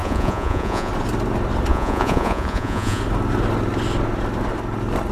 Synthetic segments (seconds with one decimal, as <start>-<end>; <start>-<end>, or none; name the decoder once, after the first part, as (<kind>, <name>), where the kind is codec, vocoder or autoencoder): 0.0-0.9 (vocoder, Vocos); 1.7-3.0